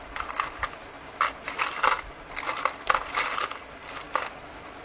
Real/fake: real